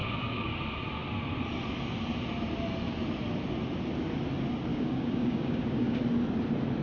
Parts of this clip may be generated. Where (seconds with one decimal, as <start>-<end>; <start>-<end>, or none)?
0.0-0.6; 4.7-6.0